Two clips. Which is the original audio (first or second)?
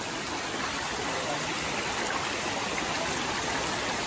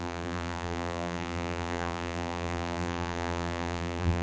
first